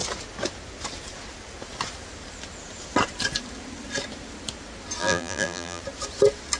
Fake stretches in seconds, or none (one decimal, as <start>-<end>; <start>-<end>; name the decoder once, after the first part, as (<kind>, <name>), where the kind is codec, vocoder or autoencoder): 5.0-5.8 (vocoder, BigVGAN v2)